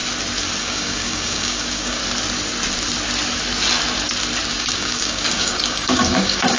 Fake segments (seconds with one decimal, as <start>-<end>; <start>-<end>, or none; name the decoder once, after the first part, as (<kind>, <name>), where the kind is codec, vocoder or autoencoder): 0.6-2.0 (codec, DAC); 4.5-6.6